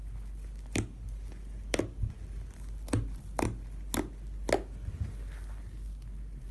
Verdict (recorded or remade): recorded